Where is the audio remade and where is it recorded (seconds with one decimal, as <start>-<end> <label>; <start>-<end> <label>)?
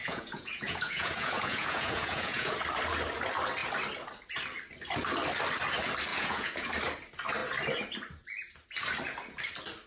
0.0-2.5 remade; 2.5-6.1 recorded; 6.1-6.7 remade; 6.7-9.9 recorded